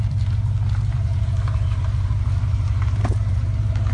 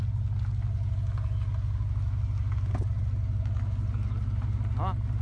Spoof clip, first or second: first